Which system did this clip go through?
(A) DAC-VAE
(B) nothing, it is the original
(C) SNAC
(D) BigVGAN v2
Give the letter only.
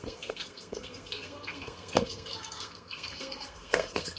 C